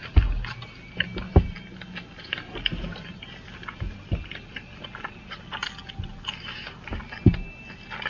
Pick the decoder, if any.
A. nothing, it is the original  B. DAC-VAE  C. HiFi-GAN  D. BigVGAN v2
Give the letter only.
A